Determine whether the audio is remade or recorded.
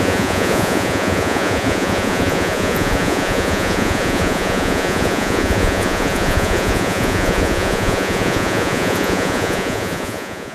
remade